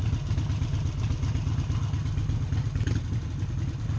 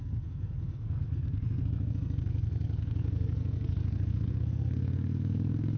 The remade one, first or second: second